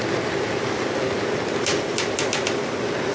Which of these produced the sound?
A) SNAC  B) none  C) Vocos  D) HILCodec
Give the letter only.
B